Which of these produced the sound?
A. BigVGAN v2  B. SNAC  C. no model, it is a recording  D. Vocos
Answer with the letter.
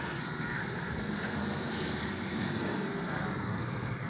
B